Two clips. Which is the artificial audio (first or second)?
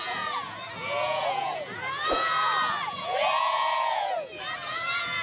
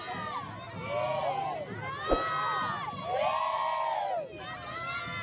first